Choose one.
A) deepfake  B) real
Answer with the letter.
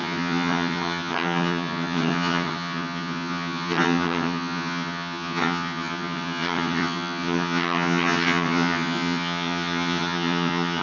A